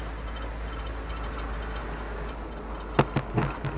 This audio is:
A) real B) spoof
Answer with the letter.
A